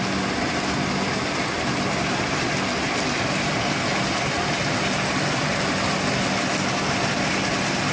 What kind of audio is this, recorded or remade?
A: recorded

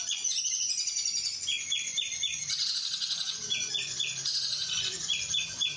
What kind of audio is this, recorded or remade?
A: remade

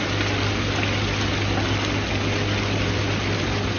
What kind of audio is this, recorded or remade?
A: recorded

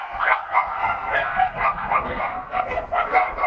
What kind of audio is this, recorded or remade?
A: remade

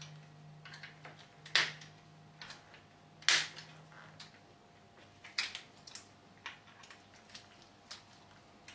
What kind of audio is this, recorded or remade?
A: recorded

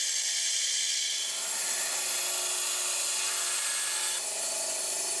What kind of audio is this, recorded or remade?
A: recorded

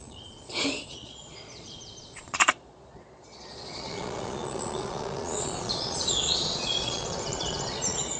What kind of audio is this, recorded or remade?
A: remade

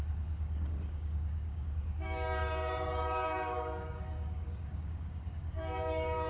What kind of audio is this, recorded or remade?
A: remade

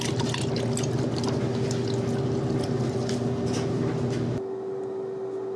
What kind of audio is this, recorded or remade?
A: recorded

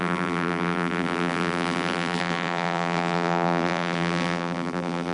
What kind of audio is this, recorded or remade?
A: remade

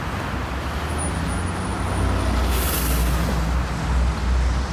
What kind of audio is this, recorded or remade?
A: recorded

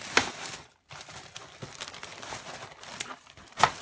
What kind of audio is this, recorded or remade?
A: recorded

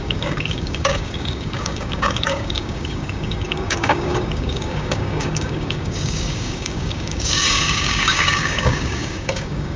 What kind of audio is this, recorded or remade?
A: remade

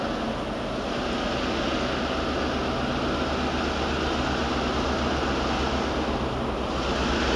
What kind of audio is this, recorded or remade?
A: recorded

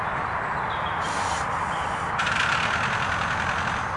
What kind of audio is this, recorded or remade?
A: recorded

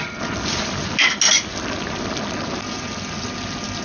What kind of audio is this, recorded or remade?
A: recorded